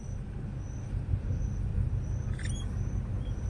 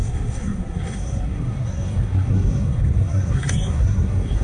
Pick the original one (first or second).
first